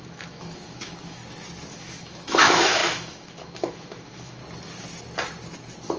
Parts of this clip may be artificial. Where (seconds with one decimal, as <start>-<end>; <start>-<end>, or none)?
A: 0.0-1.2; 1.7-4.4